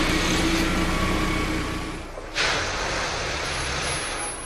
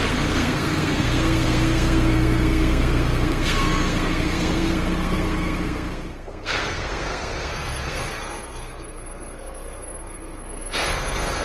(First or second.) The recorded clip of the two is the first